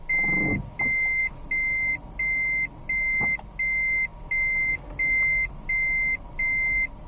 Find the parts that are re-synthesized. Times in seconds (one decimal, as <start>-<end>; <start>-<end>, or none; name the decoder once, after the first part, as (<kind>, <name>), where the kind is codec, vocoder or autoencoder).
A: none